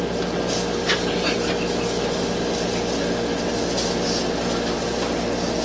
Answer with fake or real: real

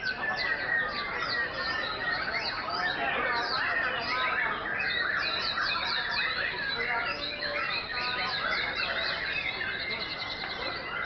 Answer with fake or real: real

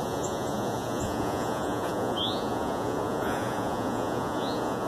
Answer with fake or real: fake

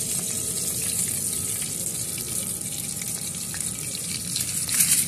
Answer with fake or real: real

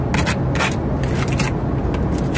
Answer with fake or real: real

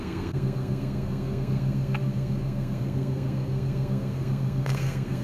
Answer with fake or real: fake